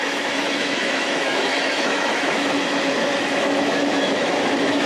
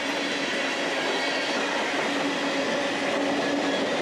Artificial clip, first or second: first